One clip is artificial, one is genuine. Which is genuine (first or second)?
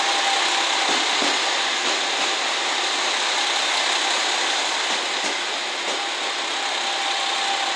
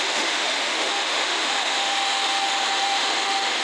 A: first